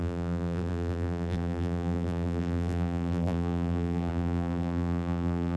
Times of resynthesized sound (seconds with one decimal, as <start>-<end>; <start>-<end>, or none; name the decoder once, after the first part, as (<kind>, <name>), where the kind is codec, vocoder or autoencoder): 0.0-5.6 (vocoder, BigVGAN v2)